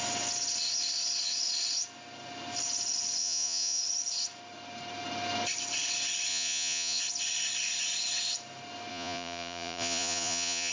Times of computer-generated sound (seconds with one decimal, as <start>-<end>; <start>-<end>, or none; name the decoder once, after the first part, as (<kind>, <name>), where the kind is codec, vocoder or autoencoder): 3.2-3.8 (vocoder, Vocos); 6.3-7.0; 8.9-10.7